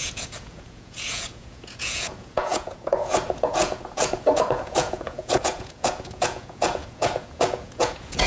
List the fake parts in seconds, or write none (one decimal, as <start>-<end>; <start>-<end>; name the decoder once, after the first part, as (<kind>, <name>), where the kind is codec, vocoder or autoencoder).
0.0-8.3 (vocoder, Vocos)